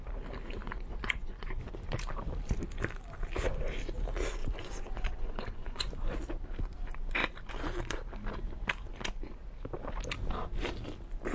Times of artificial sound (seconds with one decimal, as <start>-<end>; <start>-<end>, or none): 0.6-1.6; 4.4-5.9